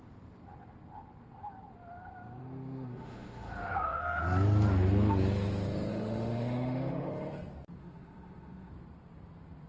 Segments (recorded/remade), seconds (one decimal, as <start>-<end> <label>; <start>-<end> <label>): 0.0-2.4 recorded; 2.4-4.0 remade; 4.0-5.9 recorded; 5.9-7.1 remade; 7.1-7.8 recorded; 7.8-8.7 remade; 8.7-9.7 recorded